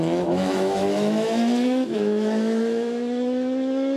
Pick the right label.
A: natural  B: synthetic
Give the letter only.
B